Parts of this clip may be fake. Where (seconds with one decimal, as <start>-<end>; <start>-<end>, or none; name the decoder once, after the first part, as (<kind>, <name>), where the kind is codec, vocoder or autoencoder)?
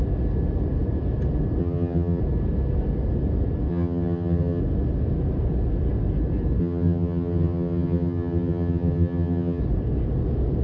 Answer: 1.6-2.2 (vocoder, HiFi-GAN); 3.7-4.6; 6.6-9.6